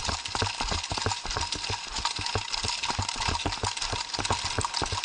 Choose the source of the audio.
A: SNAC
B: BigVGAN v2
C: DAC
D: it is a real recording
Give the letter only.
D